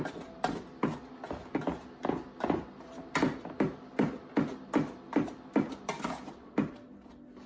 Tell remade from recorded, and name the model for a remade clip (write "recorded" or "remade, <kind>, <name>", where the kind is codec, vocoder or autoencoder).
recorded